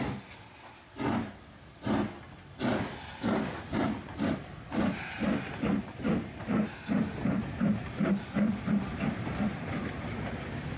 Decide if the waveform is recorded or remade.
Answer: recorded